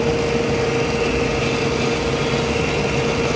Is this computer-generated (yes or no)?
no